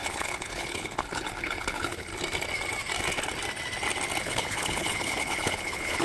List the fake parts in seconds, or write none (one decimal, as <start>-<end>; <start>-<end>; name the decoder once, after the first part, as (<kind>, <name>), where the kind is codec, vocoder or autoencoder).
0.0-2.1 (codec, HILCodec); 4.2-6.0